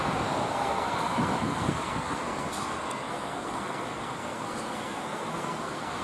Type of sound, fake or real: fake